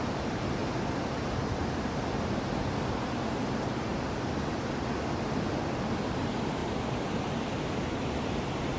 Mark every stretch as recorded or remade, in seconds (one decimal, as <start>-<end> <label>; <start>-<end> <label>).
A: 0.0-0.6 remade; 0.6-2.9 recorded; 2.9-3.9 remade; 3.9-6.1 recorded; 6.1-8.8 remade